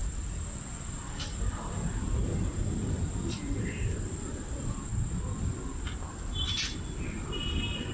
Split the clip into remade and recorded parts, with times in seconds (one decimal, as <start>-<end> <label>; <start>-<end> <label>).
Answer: 0.0-4.9 remade; 4.9-5.4 recorded; 5.4-7.9 remade